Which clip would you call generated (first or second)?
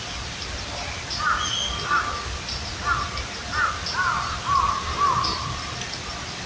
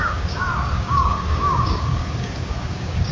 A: second